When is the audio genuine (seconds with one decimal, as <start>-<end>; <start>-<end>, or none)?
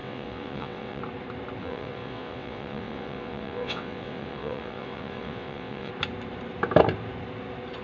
1.0-1.6; 5.9-7.8